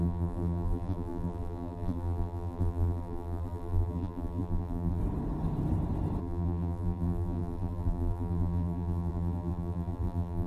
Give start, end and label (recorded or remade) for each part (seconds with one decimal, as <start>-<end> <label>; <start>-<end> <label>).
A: 0.0-5.0 remade; 5.0-6.2 recorded; 6.2-10.5 remade